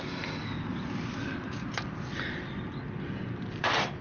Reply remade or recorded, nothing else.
recorded